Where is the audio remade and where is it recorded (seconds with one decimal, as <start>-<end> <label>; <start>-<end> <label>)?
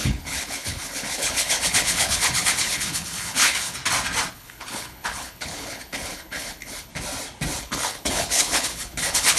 0.0-3.8 remade; 3.8-4.3 recorded; 4.3-6.9 remade; 6.9-7.6 recorded; 7.6-9.4 remade